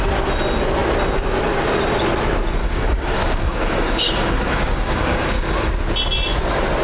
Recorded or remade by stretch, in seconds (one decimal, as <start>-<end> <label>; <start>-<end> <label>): 0.0-2.6 recorded; 2.6-5.7 remade; 5.7-6.8 recorded